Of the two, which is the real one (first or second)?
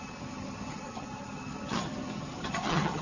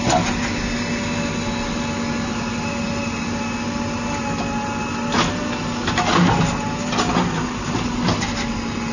second